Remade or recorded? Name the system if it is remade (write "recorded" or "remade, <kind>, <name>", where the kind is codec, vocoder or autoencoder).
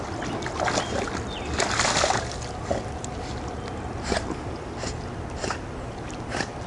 recorded